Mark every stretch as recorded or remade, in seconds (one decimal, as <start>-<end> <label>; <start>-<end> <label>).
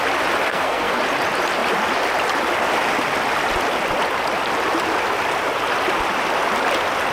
0.0-0.5 recorded; 0.5-1.0 remade; 1.0-7.1 recorded